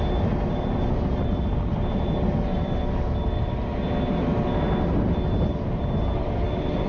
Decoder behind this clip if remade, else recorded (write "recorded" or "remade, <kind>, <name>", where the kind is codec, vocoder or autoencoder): recorded